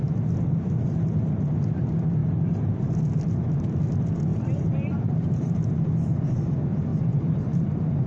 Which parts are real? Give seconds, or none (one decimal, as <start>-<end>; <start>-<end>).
0.0-4.3; 5.7-6.9